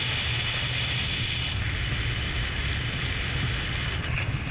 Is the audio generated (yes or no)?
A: no